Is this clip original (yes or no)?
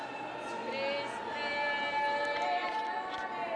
yes